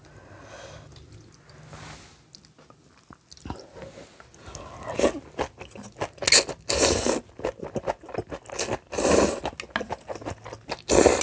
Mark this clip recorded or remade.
recorded